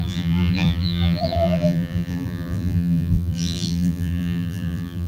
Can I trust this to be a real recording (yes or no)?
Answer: no